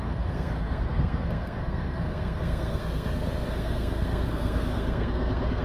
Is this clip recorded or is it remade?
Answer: remade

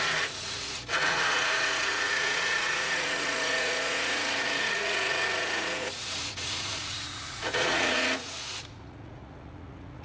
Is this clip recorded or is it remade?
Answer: remade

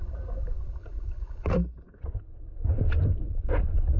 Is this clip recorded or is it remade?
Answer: recorded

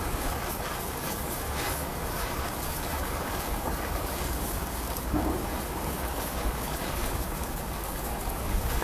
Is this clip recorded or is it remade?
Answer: remade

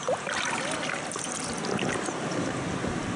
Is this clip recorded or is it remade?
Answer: recorded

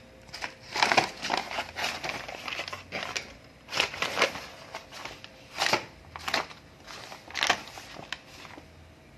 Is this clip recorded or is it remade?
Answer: recorded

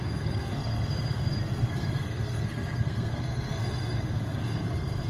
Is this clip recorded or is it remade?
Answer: remade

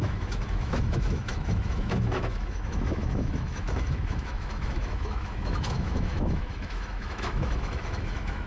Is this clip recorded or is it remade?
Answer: remade